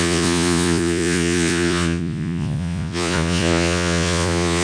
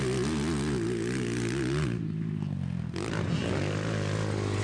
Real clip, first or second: second